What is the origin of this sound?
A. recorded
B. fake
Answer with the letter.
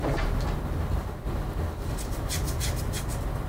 A